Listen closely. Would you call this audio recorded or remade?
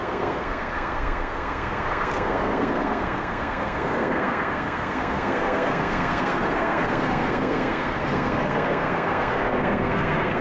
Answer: remade